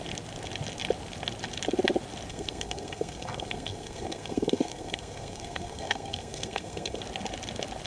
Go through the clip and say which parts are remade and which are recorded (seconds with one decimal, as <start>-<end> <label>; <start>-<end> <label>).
0.0-2.3 recorded; 2.3-7.0 remade; 7.0-7.9 recorded